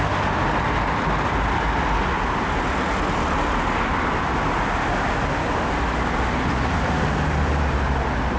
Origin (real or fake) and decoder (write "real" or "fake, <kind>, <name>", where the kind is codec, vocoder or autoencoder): real